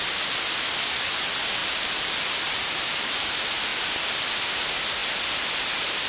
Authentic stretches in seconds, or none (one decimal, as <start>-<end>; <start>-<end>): 0.0-1.6; 3.3-5.0